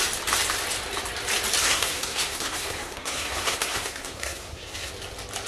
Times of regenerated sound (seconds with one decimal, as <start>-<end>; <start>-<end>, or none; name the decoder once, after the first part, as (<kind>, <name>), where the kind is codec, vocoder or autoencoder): 1.6-4.9 (codec, SNAC)